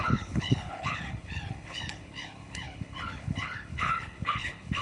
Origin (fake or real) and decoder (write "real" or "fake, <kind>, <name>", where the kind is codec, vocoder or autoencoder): fake, codec, HILCodec